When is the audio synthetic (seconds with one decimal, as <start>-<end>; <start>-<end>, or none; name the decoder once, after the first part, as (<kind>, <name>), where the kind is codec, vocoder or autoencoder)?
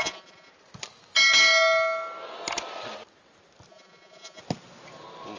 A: 0.0-0.5 (vocoder, Vocos); 3.7-4.4